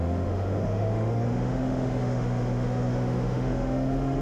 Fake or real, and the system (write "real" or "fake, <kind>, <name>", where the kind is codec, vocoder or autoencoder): fake, autoencoder, DAC-VAE